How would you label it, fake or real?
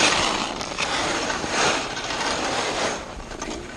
fake